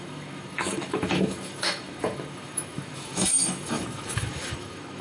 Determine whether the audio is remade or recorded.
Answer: remade